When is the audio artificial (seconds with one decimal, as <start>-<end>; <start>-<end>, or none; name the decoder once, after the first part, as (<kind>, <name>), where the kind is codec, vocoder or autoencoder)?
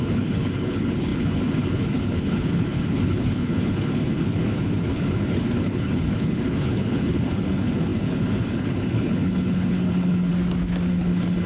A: 0.0-10.3 (codec, HILCodec); 10.9-11.5